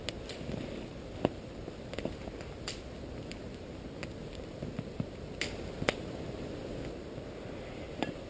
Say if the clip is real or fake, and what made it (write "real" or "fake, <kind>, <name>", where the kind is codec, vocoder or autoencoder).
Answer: real